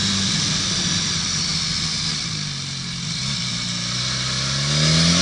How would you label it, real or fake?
real